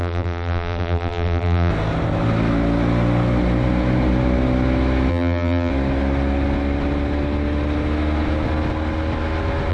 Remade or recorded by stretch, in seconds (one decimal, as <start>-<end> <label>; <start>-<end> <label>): 0.0-1.7 remade; 1.7-5.1 recorded; 5.1-5.7 remade; 5.7-9.7 recorded